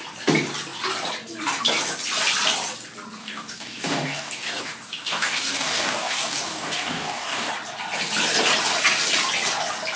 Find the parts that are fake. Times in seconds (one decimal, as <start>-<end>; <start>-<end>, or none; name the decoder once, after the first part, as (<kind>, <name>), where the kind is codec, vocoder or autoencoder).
3.2-7.5 (codec, DAC)

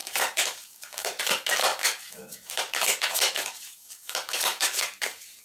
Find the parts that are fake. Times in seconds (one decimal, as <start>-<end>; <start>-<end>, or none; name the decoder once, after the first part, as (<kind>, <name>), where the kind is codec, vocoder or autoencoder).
0.0-5.4 (codec, DAC)

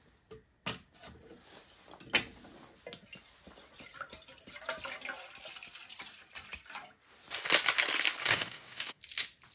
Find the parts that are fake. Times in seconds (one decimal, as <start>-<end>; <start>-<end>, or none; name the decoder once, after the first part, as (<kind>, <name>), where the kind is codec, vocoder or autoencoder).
8.2-9.0 (codec, DAC)